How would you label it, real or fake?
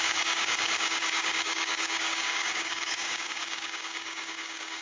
fake